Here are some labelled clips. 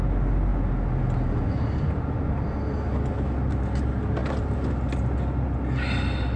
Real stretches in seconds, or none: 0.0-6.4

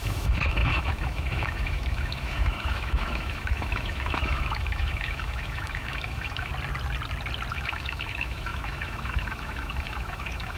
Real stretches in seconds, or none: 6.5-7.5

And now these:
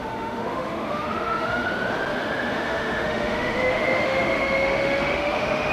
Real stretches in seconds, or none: 1.7-2.1

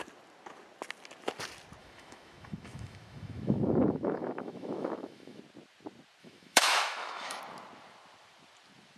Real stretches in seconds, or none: 0.0-1.8; 5.4-6.2; 7.4-9.0

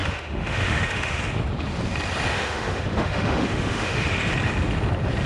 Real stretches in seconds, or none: 1.2-2.3; 4.3-5.3

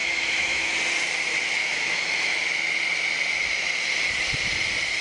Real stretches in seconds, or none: 0.7-1.6; 2.4-5.0

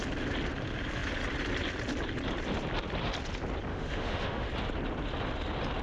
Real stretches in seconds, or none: 0.0-3.7; 4.5-5.8